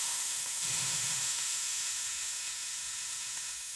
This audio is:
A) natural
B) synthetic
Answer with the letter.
B